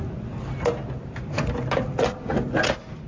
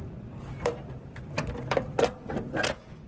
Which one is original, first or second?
first